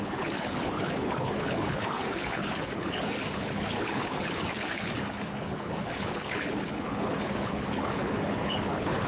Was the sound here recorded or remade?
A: remade